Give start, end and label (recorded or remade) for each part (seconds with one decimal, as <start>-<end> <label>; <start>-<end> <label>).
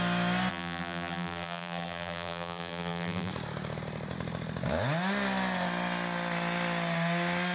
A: 0.0-0.5 recorded; 0.5-3.3 remade; 3.3-7.5 recorded